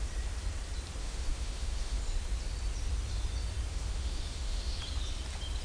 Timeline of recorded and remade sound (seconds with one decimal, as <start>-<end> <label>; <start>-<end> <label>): 0.0-1.0 recorded; 1.0-2.0 remade; 2.0-3.7 recorded; 3.7-4.8 remade; 4.8-5.6 recorded